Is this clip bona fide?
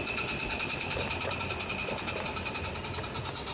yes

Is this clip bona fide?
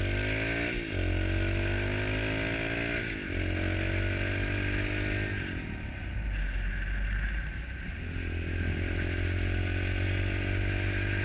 yes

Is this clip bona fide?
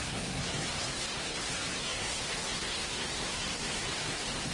no